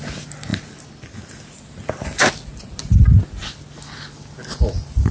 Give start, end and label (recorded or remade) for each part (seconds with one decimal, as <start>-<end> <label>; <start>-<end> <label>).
0.0-5.1 recorded